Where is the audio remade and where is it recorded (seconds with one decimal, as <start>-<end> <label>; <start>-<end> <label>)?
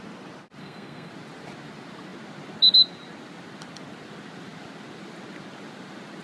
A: 0.0-0.6 recorded; 0.6-1.1 remade; 1.1-6.2 recorded